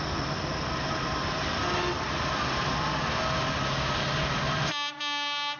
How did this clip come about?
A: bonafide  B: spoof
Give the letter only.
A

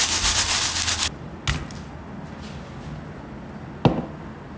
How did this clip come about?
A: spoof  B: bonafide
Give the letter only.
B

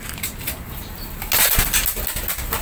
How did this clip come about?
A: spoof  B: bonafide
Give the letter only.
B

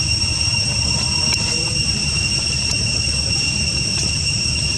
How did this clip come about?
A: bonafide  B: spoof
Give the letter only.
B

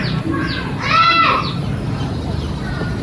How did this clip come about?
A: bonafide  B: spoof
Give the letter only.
A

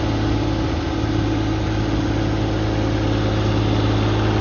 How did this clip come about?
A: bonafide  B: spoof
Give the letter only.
A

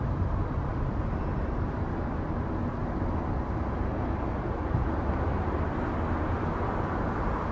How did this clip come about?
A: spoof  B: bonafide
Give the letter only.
B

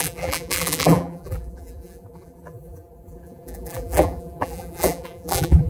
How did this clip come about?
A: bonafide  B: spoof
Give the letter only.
B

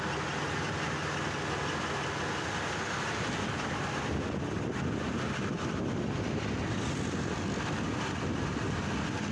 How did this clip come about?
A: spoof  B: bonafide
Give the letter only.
B